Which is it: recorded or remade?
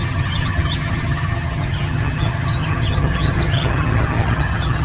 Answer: remade